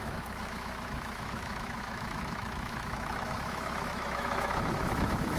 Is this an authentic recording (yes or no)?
no